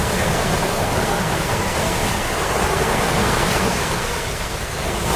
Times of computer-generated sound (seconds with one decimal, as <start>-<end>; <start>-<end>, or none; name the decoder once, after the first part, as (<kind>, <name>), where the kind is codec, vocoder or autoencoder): 0.0-5.2 (codec, SNAC)